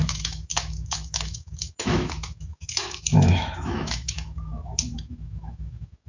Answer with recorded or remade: remade